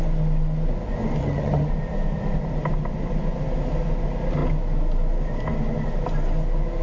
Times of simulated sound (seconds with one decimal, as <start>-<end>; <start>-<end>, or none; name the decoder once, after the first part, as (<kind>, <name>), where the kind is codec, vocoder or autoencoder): 1.2-1.7 (vocoder, HiFi-GAN)